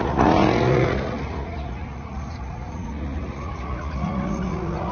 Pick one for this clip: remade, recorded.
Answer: remade